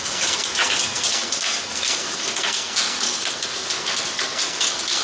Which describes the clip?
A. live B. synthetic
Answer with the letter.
B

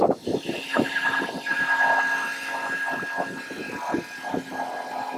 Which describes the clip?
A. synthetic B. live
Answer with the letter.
B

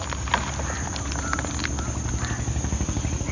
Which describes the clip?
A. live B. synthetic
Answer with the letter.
A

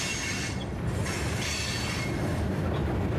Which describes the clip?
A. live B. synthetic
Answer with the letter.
A